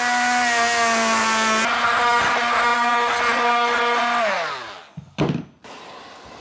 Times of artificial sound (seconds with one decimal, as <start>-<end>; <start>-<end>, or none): none